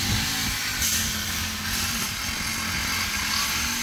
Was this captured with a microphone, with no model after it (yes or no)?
yes